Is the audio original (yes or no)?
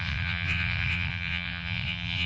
no